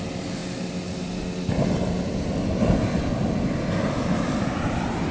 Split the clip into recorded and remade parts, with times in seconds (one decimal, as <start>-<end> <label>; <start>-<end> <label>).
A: 0.0-5.1 recorded